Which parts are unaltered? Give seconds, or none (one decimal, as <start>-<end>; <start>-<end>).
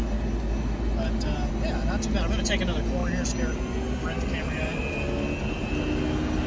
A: 0.0-6.5